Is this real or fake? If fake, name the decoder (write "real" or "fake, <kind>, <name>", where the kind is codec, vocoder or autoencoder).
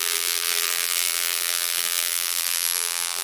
fake, vocoder, BigVGAN v2